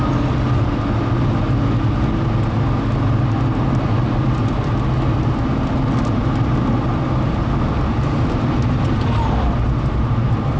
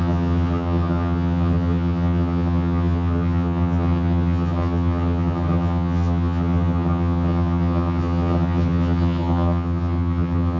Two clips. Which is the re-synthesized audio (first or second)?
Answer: second